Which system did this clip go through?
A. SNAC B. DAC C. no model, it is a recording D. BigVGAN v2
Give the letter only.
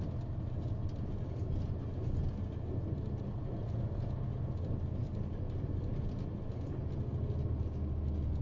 C